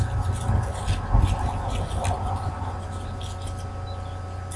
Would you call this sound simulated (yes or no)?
no